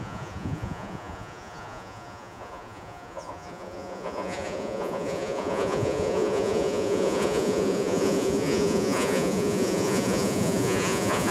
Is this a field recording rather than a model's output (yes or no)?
no